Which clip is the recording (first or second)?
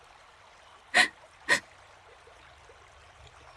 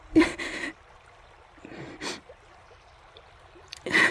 first